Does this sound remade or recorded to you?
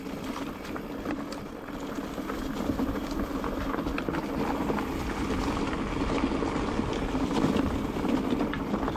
recorded